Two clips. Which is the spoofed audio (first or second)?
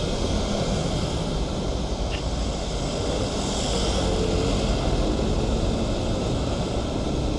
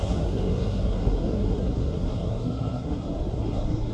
second